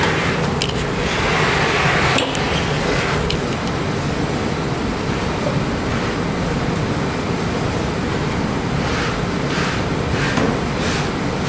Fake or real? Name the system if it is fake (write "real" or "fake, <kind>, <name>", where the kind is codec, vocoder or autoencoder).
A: fake, vocoder, BigVGAN v2